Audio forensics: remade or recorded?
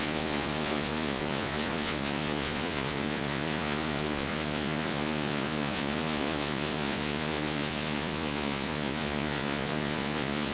remade